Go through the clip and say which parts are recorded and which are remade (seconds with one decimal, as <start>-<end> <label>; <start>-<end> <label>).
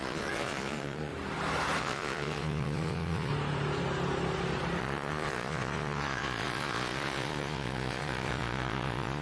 0.0-1.1 remade; 1.1-1.8 recorded; 1.8-3.3 remade; 3.3-4.8 recorded; 4.8-9.2 remade